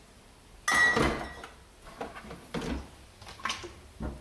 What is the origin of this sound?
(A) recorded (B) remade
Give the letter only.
A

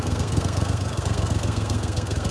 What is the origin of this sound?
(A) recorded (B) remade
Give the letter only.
B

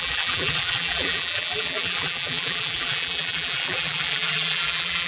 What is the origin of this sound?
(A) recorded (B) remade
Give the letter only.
B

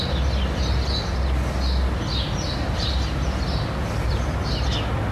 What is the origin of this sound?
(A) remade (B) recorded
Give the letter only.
B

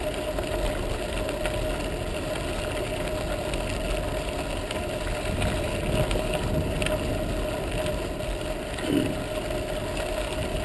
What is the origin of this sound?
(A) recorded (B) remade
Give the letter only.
A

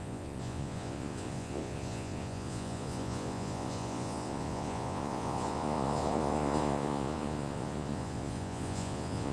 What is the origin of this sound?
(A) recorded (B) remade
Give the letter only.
B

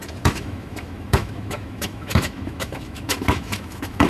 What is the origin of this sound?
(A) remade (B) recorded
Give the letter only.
A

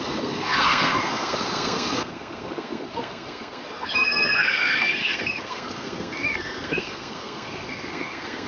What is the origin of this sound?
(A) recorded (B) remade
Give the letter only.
B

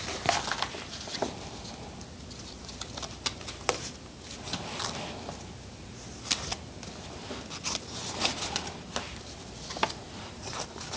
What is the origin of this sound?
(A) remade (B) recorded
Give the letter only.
B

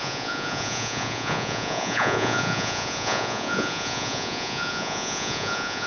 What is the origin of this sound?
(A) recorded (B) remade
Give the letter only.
B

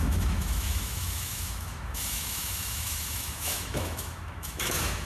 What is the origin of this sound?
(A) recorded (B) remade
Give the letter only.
B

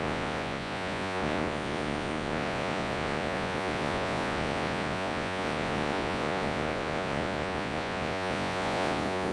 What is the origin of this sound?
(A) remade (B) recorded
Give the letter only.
A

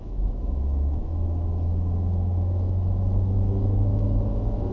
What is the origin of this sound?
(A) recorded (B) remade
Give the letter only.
B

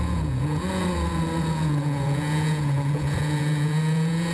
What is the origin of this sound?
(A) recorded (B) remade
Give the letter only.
B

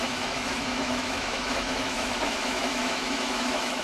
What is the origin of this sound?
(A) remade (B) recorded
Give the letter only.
A